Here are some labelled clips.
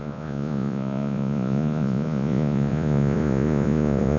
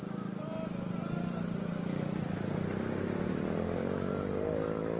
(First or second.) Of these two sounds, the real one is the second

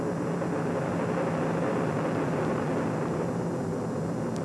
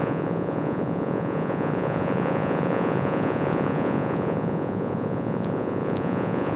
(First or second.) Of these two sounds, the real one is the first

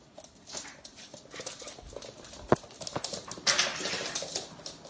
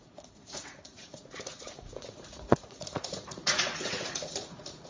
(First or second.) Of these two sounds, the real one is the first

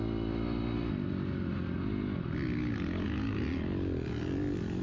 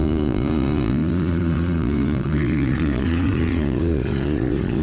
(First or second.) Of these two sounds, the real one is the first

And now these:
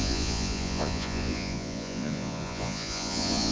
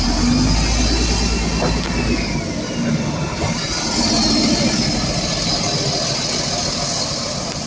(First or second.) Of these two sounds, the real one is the second